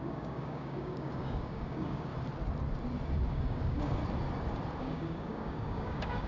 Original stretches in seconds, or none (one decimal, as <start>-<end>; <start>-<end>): 2.1-3.3; 4.0-4.8